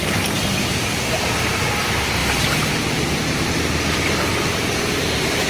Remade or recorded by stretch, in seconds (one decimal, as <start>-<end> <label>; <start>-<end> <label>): 0.0-5.5 remade